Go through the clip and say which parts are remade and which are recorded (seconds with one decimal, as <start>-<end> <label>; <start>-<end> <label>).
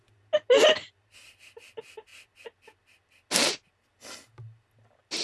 0.0-5.2 recorded